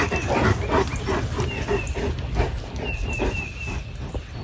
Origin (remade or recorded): recorded